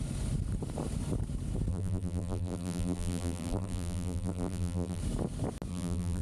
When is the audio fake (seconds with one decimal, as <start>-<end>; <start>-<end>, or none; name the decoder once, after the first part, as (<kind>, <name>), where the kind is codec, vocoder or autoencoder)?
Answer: 1.7-5.0 (vocoder, BigVGAN v2); 5.7-6.2